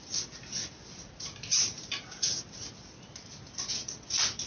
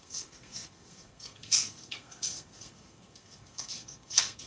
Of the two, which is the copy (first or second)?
second